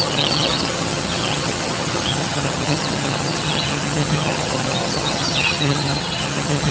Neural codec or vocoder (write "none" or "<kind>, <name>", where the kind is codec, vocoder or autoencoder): vocoder, HiFi-GAN